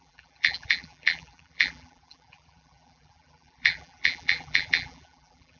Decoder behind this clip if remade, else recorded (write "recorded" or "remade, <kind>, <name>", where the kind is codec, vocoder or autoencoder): remade, vocoder, BigVGAN v2